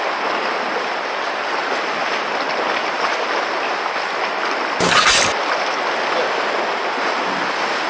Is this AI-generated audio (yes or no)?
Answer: no